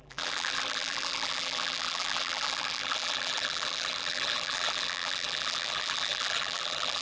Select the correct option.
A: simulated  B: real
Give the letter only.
A